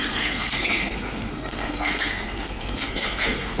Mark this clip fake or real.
fake